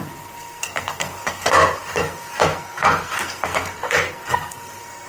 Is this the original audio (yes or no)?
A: no